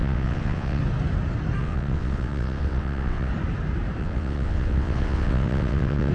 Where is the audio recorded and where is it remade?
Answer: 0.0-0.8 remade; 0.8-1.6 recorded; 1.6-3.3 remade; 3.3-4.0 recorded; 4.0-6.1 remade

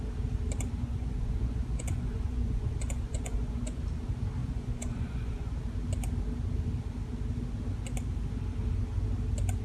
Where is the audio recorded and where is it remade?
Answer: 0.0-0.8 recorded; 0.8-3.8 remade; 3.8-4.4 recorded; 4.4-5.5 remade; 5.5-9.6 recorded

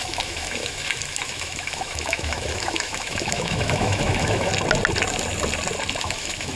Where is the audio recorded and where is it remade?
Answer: 0.0-4.5 remade; 4.5-6.0 recorded; 6.0-6.6 remade

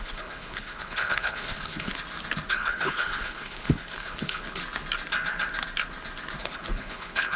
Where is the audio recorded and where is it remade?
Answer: 0.0-1.9 remade; 1.9-2.5 recorded; 2.5-4.6 remade; 4.6-6.4 recorded; 6.4-7.4 remade

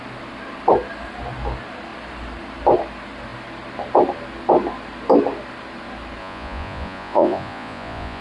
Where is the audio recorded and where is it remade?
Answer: 0.0-6.2 recorded; 6.2-8.2 remade

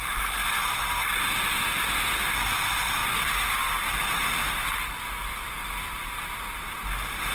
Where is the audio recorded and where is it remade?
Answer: 0.0-7.3 recorded